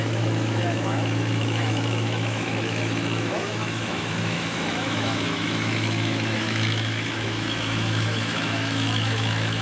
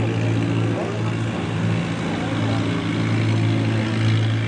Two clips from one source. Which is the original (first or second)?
second